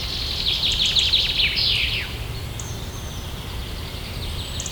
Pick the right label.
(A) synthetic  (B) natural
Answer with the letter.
B